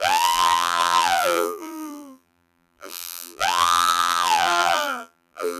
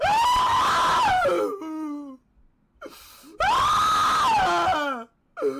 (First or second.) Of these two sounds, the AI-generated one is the first